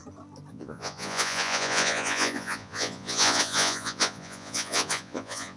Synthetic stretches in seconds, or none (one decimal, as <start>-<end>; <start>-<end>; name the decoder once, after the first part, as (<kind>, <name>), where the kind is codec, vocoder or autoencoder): 0.5-5.6 (vocoder, Vocos)